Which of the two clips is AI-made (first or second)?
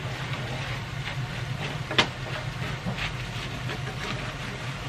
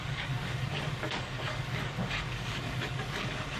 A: second